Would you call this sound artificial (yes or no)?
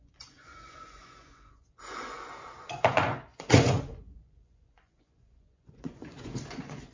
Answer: yes